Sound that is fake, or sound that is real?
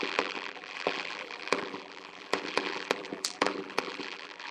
fake